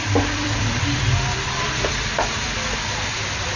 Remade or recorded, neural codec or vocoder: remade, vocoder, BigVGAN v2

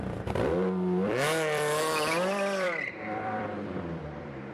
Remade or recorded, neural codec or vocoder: remade, vocoder, BigVGAN v2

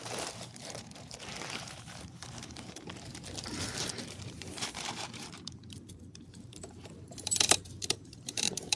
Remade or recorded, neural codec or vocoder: remade, vocoder, BigVGAN v2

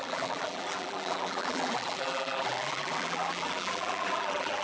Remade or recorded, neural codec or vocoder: remade, vocoder, BigVGAN v2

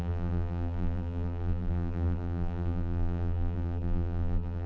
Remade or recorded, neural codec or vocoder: remade, vocoder, BigVGAN v2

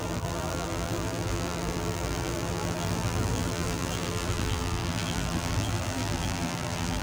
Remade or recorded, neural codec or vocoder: remade, vocoder, BigVGAN v2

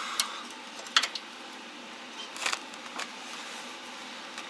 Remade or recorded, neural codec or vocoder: recorded